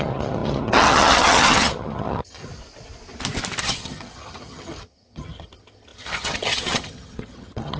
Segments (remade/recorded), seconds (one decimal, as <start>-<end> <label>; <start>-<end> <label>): 0.0-2.4 remade; 2.4-3.6 recorded; 3.6-7.8 remade